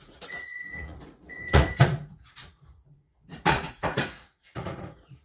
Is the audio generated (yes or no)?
yes